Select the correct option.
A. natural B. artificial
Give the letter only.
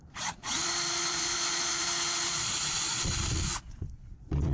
B